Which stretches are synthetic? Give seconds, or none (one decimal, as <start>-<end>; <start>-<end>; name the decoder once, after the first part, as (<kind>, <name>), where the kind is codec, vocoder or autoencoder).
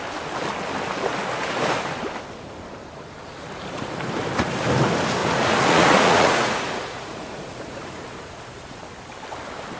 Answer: 5.2-8.8 (vocoder, Vocos)